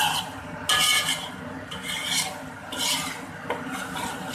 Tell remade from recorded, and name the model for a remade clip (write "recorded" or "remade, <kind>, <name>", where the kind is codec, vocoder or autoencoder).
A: recorded